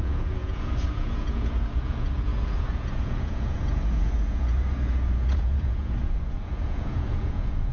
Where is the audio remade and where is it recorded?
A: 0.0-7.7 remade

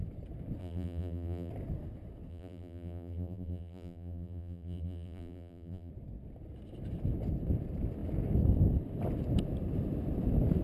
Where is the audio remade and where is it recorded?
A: 0.0-0.6 recorded; 0.6-1.5 remade; 1.5-2.3 recorded; 2.3-5.9 remade; 5.9-10.6 recorded

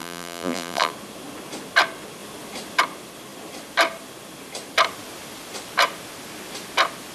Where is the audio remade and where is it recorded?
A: 0.0-0.9 remade; 0.9-7.1 recorded

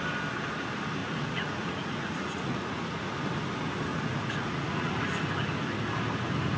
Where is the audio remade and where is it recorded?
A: 0.0-1.0 recorded; 1.0-3.0 remade; 3.0-3.9 recorded; 3.9-5.0 remade; 5.0-6.6 recorded

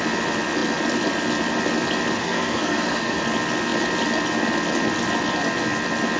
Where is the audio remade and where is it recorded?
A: 0.0-2.2 recorded; 2.2-3.2 remade; 3.2-6.2 recorded

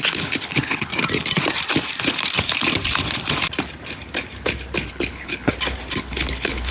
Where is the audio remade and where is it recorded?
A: 0.0-0.9 remade; 0.9-4.9 recorded; 4.9-5.5 remade; 5.5-6.0 recorded; 6.0-6.7 remade

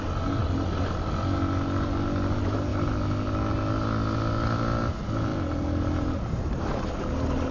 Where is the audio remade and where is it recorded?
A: 0.0-7.5 recorded